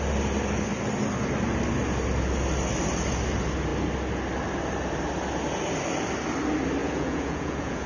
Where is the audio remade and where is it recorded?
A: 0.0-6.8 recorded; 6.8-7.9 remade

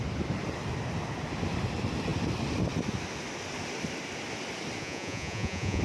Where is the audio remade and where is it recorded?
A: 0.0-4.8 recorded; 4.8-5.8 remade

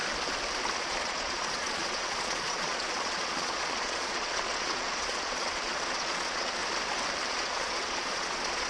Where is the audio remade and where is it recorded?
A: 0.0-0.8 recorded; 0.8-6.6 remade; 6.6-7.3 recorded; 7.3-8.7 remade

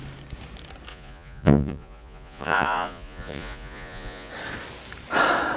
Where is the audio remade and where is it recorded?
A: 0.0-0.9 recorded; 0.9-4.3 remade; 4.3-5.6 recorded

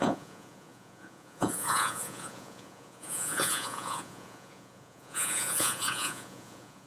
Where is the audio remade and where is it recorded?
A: 0.0-6.9 remade

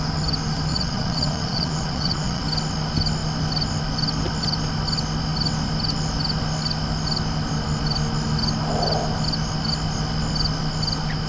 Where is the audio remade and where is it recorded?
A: 0.0-0.7 recorded; 0.7-2.4 remade; 2.4-11.3 recorded